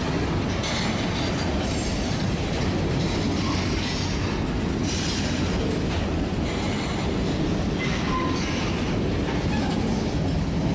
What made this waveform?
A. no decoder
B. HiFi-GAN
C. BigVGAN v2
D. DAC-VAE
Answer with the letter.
A